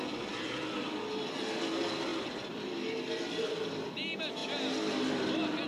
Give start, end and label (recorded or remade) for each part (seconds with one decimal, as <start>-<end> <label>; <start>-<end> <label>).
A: 0.0-5.7 recorded